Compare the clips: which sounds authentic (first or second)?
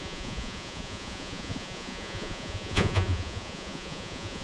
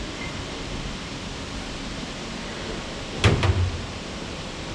second